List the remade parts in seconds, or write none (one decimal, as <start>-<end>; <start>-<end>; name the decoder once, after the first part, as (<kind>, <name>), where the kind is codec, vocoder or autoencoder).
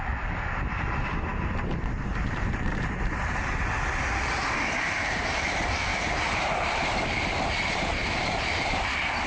0.0-9.3 (vocoder, BigVGAN v2)